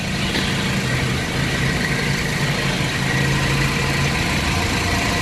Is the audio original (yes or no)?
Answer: yes